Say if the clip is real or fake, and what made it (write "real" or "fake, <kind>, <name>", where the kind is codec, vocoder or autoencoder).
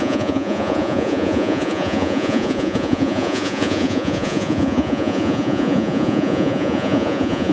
fake, vocoder, Vocos